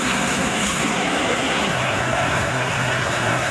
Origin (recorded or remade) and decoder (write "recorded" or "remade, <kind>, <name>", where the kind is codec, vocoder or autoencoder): remade, codec, SNAC